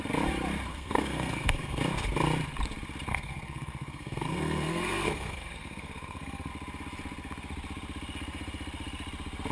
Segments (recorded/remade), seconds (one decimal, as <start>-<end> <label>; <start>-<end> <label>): 0.0-0.7 recorded; 0.7-1.8 remade; 1.8-3.1 recorded; 3.1-6.5 remade; 6.5-9.5 recorded